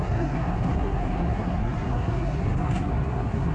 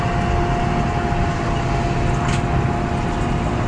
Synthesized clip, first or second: first